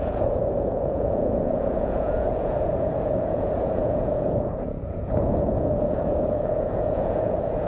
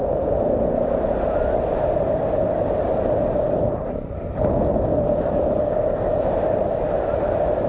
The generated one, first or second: first